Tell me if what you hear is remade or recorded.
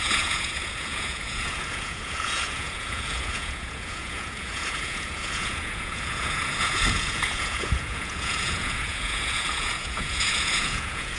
remade